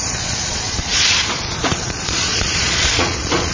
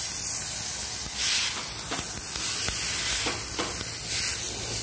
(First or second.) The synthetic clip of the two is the first